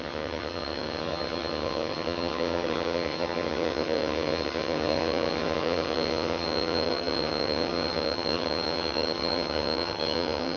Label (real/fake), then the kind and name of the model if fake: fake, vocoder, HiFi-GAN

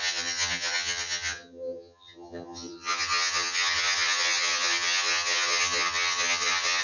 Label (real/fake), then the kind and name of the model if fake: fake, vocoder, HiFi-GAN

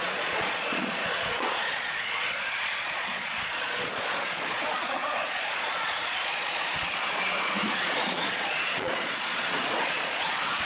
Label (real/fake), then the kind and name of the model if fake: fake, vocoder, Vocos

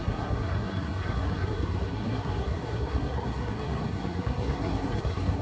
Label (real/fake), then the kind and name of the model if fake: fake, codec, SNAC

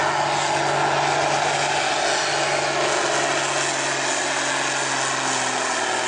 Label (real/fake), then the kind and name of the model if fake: real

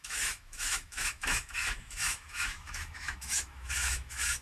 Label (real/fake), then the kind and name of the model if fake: fake, autoencoder, DAC-VAE